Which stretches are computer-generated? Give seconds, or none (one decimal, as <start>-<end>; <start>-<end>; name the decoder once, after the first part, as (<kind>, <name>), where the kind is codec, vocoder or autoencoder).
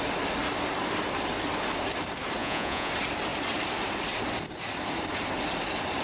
2.4-2.9 (vocoder, Vocos)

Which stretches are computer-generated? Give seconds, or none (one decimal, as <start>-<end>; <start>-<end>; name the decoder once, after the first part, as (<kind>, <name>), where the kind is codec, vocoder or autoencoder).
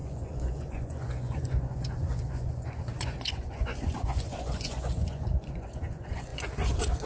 0.0-7.1 (vocoder, Vocos)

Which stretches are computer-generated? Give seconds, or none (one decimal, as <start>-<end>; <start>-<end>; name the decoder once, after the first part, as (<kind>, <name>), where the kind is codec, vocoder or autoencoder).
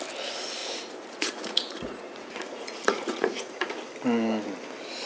0.6-3.7 (vocoder, Vocos)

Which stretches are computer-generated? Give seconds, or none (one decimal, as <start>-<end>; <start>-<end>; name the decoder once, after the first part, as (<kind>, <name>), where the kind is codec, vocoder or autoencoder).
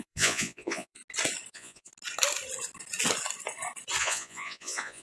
0.0-1.0 (vocoder, Vocos); 1.5-1.9; 4.0-5.0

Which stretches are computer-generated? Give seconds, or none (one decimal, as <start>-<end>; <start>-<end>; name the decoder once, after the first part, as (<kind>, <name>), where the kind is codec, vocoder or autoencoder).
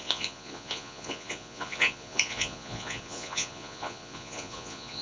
0.0-5.0 (vocoder, Vocos)